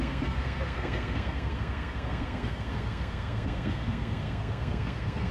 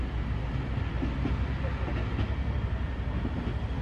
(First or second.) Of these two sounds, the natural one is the second